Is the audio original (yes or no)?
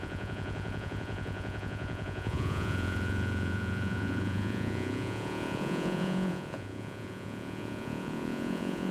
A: no